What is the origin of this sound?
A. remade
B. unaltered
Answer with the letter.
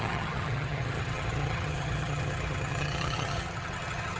A